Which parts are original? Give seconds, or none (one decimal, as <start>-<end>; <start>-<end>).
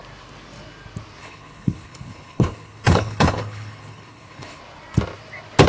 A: 0.0-1.2; 4.6-5.7